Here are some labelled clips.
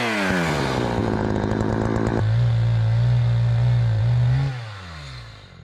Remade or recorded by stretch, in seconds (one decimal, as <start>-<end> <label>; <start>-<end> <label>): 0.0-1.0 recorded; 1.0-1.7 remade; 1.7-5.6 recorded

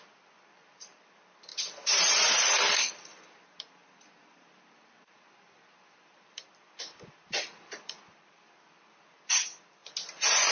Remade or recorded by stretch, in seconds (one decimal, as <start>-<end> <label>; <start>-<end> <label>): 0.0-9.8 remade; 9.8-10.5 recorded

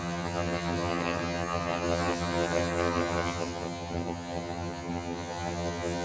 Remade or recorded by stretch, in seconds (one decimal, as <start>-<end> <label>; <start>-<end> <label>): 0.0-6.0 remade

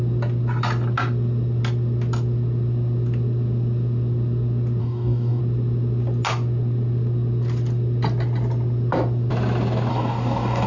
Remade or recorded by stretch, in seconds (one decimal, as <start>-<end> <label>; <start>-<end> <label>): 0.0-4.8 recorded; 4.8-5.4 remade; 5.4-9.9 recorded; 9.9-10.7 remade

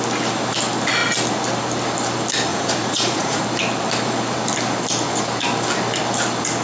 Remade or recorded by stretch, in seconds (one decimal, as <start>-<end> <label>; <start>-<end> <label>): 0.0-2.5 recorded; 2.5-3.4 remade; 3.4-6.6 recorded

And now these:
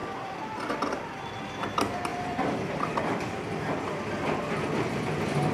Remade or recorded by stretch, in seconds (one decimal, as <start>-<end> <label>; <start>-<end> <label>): 0.0-1.3 remade; 1.3-2.1 recorded; 2.1-3.8 remade; 3.8-5.5 recorded

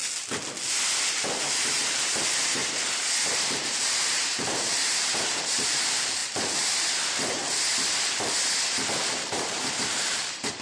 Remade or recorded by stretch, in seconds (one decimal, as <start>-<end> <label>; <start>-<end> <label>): 0.0-1.1 recorded; 1.1-2.6 remade; 2.6-3.6 recorded; 3.6-7.4 remade; 7.4-9.1 recorded; 9.1-10.6 remade